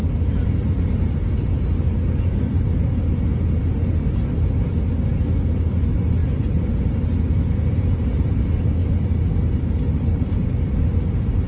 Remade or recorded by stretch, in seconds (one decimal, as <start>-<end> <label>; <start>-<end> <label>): 0.0-11.5 recorded